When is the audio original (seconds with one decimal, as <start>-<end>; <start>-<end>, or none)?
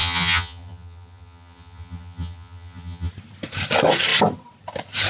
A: 3.1-5.1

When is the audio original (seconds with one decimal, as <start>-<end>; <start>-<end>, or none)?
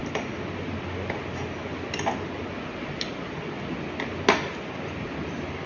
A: 0.0-5.7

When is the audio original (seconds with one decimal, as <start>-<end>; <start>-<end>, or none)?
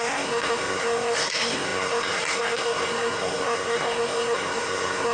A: none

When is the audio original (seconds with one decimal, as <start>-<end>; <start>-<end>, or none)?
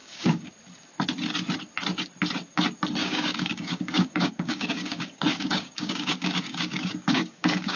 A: 0.5-3.0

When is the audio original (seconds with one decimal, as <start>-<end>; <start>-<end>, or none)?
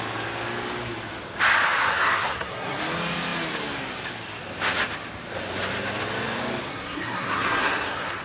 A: 0.0-1.9; 2.8-6.7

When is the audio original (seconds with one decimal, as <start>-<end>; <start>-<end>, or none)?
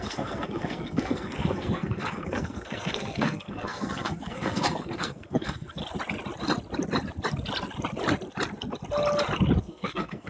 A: 5.8-9.6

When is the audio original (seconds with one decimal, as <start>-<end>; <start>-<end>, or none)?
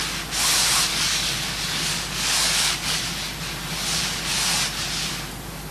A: 0.0-0.9; 3.0-5.7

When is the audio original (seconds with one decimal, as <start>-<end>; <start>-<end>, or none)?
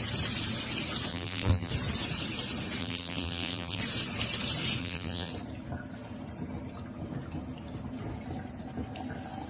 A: 0.0-1.1; 1.7-2.8; 3.8-4.8; 5.3-9.5